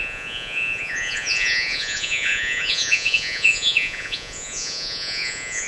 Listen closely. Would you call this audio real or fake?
fake